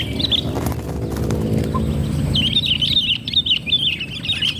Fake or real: real